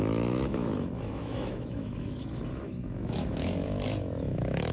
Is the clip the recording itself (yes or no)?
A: no